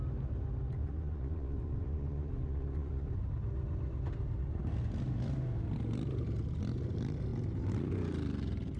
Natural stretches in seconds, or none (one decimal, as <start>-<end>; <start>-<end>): 0.0-0.8; 3.2-8.8